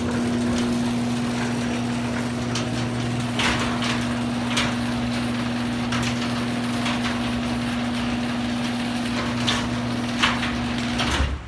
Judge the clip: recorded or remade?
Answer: recorded